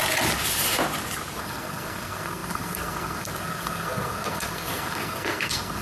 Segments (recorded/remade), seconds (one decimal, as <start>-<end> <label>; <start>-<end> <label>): 0.0-1.4 recorded; 1.4-5.8 remade